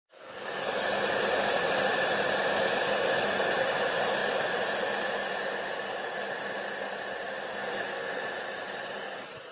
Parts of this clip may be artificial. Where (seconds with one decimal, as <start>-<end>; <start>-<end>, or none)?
none